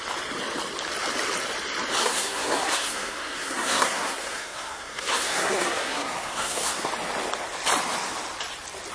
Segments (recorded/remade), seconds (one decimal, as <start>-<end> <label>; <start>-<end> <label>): 0.0-2.0 recorded; 2.0-6.9 remade; 6.9-8.9 recorded